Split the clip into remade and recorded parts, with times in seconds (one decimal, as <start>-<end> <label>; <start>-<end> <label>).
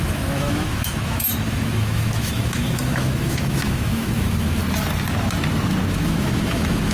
0.0-4.6 remade; 4.6-5.9 recorded; 5.9-6.9 remade